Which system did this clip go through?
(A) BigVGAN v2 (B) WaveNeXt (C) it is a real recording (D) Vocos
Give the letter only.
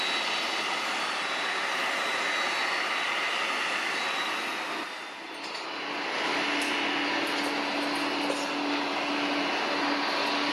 C